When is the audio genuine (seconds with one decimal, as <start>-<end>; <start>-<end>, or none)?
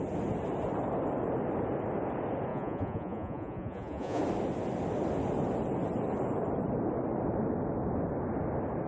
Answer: 0.0-2.5; 4.2-8.9